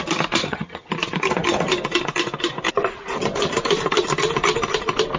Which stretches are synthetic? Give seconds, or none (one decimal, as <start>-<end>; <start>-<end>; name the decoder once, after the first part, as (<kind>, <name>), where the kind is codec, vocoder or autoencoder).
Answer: 0.4-0.9 (vocoder, HiFi-GAN)